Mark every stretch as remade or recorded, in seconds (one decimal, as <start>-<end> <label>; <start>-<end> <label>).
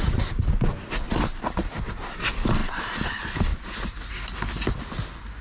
0.0-5.4 recorded